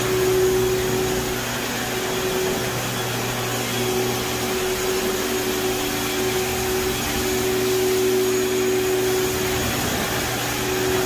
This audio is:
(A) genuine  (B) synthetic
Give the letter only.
A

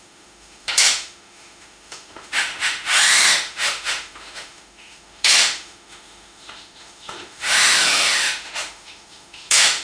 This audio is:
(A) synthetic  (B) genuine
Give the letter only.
A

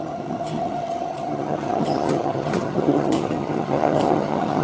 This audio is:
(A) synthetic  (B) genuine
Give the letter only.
A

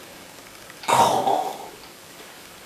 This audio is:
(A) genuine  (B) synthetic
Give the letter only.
B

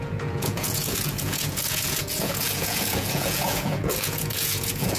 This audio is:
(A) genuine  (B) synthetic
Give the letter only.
B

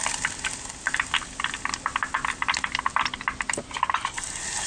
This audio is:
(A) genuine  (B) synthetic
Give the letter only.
A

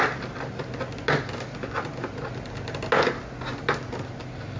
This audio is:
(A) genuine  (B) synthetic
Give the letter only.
A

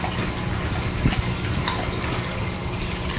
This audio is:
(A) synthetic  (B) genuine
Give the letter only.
B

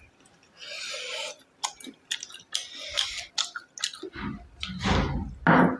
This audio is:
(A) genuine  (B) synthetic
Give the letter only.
A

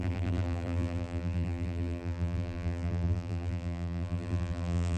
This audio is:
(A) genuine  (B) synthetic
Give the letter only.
B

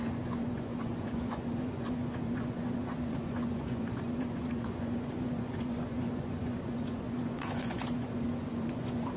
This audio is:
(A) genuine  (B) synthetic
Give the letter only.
B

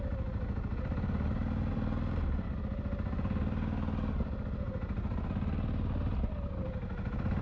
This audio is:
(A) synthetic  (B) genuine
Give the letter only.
B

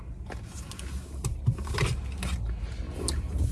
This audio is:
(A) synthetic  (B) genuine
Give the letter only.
B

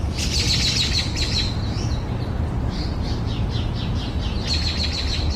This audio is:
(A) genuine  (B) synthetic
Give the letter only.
A